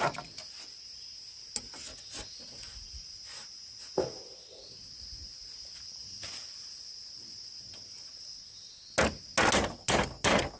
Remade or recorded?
recorded